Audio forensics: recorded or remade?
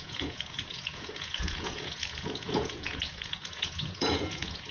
remade